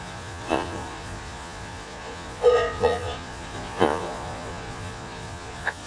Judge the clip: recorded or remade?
remade